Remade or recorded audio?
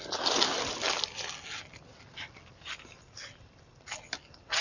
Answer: recorded